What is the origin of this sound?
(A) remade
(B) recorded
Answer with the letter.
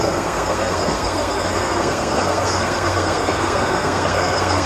A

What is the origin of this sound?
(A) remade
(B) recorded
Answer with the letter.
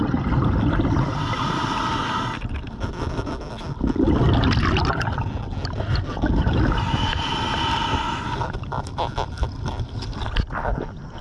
B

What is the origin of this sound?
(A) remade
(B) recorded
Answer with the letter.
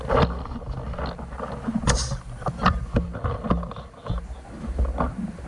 B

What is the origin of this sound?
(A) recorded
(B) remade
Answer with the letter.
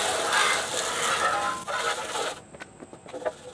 A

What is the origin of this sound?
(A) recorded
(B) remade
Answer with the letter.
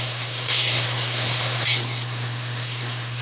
B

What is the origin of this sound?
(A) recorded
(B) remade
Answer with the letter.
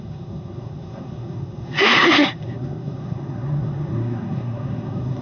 B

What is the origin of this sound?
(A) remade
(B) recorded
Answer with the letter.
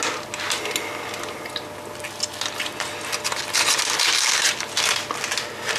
B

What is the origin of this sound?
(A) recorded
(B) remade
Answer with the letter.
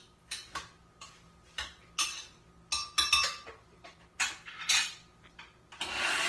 A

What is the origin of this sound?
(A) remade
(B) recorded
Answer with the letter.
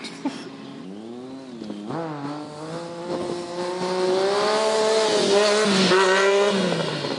B